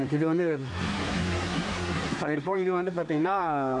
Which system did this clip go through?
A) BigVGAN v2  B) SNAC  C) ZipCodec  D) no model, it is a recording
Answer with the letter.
B